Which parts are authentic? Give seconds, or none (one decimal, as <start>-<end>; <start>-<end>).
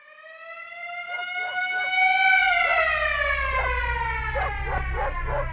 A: 0.0-5.5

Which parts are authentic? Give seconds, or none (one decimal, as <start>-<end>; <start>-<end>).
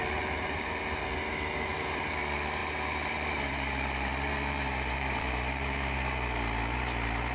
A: 0.0-2.6; 6.4-7.3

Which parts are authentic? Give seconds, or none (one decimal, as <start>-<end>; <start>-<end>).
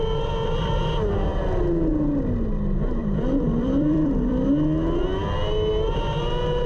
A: 0.0-3.0; 4.5-6.7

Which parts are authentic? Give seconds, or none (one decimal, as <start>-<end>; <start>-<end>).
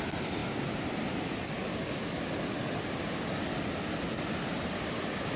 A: 0.0-5.4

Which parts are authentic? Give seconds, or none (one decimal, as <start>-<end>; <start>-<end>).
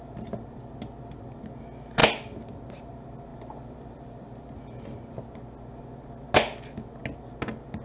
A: 0.0-3.3; 4.6-7.8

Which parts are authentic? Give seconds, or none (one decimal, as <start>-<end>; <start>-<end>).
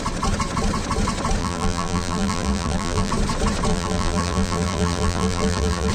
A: 0.0-1.4; 3.1-3.7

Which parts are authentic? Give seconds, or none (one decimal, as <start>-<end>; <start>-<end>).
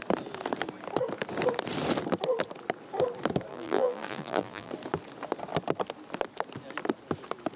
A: 0.0-3.5; 4.7-7.6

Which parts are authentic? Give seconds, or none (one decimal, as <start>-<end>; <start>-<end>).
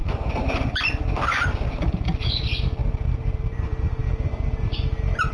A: none